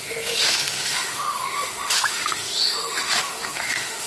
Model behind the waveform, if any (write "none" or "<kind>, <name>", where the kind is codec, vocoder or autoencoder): autoencoder, DAC-VAE